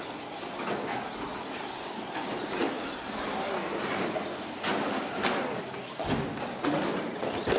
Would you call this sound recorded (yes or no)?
yes